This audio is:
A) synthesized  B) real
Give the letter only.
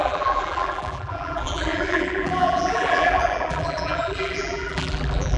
A